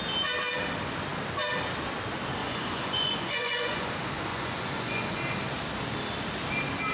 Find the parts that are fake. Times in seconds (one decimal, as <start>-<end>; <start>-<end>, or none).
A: 2.4-3.9; 4.3-5.2